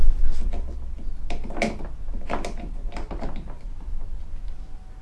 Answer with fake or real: real